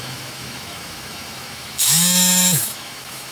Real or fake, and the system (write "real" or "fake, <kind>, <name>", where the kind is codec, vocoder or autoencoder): fake, autoencoder, DAC-VAE